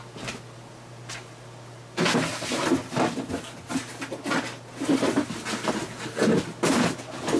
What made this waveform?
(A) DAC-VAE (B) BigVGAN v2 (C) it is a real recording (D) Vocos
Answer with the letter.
C